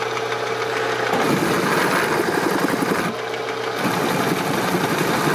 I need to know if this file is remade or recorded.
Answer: recorded